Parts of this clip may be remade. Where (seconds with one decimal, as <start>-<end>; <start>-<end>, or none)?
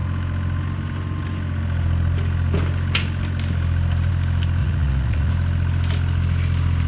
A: 4.6-5.3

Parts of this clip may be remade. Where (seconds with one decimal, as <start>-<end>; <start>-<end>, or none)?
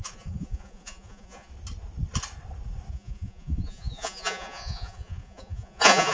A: 0.0-1.5; 2.9-6.1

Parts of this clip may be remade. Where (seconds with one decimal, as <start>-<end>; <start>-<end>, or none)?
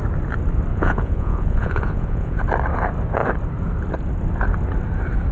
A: 0.7-2.4